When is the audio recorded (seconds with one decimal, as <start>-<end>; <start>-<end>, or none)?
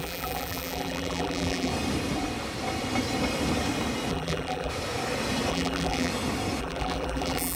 1.7-4.1; 4.7-5.5; 6.1-6.6